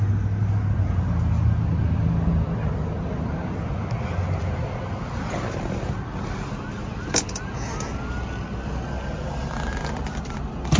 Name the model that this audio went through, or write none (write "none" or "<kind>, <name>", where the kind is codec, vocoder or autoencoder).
none